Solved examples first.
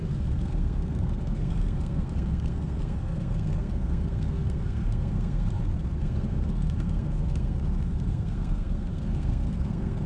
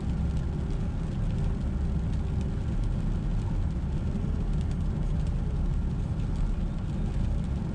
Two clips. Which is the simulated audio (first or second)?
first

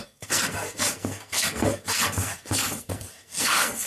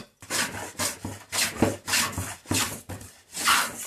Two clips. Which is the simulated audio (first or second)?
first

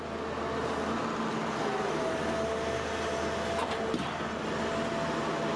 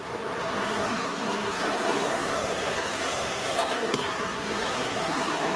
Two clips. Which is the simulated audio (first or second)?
second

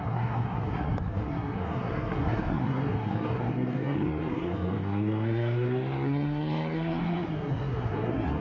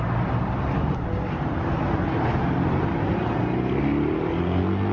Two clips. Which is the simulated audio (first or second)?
first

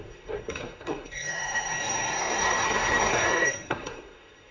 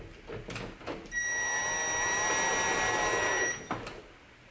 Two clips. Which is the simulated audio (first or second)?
first